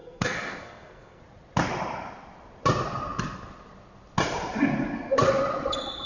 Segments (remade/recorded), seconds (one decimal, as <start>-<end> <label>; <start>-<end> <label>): 0.0-1.2 remade; 1.2-6.1 recorded